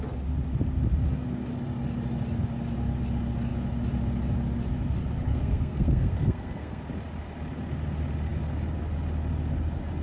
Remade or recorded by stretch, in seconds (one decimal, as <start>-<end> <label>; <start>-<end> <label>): 0.0-5.3 recorded; 5.3-6.8 remade; 6.8-10.0 recorded